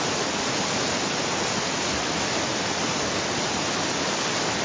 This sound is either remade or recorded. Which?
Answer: recorded